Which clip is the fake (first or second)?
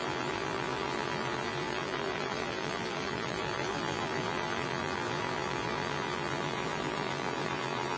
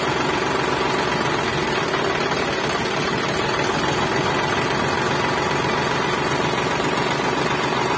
first